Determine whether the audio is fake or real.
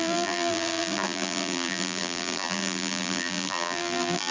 fake